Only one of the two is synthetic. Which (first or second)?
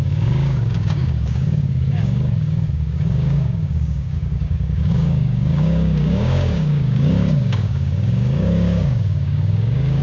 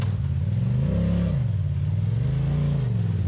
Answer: first